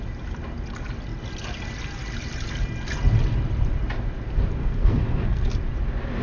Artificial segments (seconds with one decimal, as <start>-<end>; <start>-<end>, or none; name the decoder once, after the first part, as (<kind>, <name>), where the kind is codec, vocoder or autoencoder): 4.6-5.5 (codec, SNAC)